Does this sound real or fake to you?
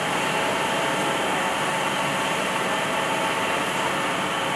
real